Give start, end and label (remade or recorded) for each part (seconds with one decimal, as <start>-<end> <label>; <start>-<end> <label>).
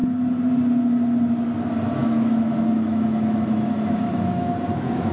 0.0-2.0 recorded; 2.0-5.1 remade